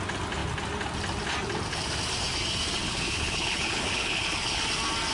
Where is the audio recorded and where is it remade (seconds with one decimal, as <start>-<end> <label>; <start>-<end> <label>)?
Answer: 0.0-2.8 recorded; 2.8-4.6 remade; 4.6-5.1 recorded